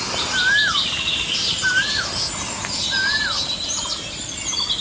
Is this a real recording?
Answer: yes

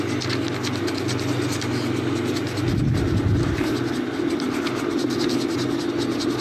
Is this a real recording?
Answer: yes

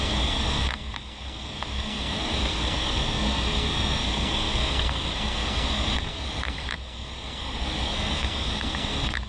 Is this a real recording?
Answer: no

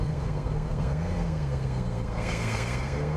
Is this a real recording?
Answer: no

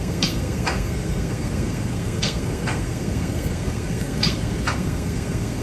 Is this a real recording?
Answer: no